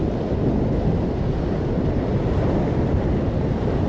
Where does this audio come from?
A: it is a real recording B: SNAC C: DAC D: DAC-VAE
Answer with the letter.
A